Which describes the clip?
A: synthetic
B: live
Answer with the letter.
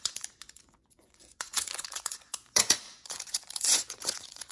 A